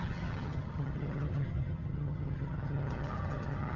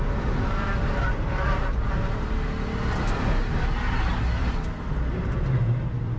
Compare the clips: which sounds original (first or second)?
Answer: second